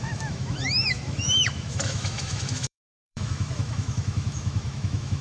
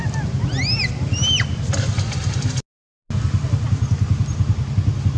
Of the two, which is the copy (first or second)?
first